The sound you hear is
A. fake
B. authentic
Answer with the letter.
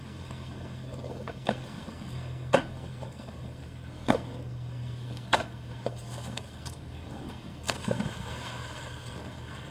A